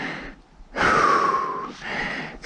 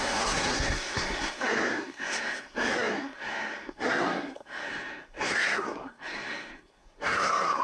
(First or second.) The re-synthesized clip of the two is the second